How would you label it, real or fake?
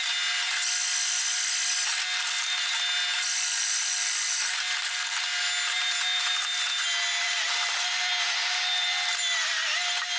real